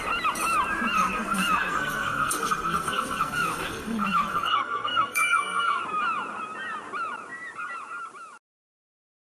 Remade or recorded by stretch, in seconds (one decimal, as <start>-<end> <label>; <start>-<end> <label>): 0.0-0.9 recorded; 0.9-5.8 remade; 5.8-9.3 recorded